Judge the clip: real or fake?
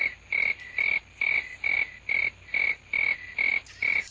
real